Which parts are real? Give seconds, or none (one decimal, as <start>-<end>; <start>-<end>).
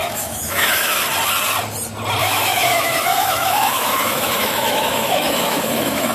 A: 1.0-2.2